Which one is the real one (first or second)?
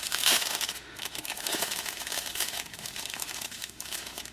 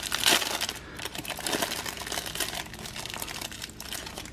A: second